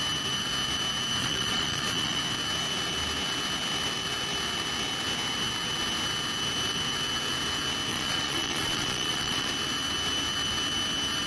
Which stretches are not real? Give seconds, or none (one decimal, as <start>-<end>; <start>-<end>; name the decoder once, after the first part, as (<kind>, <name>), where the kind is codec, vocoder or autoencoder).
1.2-2.2 (vocoder, Vocos); 7.9-9.5